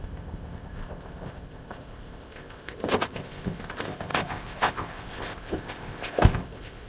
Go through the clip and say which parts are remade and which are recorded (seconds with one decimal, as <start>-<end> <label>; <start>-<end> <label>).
0.0-6.9 remade